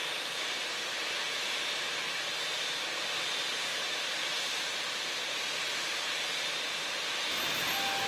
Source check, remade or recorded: recorded